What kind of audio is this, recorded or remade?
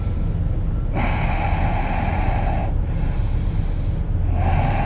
recorded